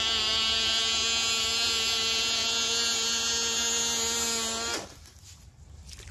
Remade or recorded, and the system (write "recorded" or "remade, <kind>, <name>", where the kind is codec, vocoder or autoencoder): recorded